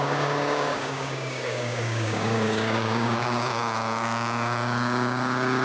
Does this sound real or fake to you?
fake